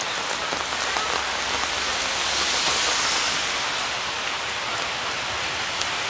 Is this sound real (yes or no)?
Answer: yes